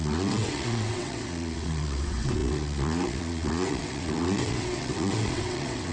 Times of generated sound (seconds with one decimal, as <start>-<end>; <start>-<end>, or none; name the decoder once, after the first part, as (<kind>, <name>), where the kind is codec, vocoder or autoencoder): 0.0-5.9 (vocoder, WaveNeXt)